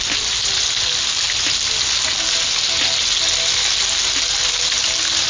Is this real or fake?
real